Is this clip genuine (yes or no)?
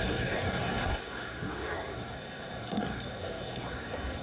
no